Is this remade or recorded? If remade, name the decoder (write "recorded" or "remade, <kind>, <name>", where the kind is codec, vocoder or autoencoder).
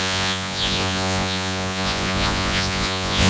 remade, vocoder, Vocos